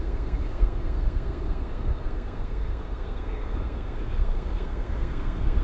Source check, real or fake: fake